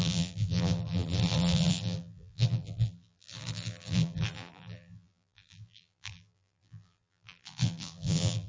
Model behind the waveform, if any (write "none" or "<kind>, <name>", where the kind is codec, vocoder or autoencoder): vocoder, BigVGAN v2